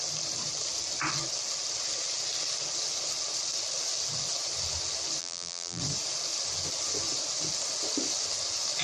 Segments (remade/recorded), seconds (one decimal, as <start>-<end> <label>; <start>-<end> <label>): 0.0-5.2 recorded; 5.2-5.8 remade; 5.8-8.8 recorded